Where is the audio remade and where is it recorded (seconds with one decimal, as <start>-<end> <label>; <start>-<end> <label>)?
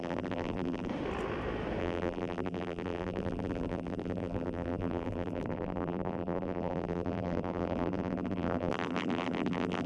0.0-0.9 remade; 0.9-1.8 recorded; 1.8-9.9 remade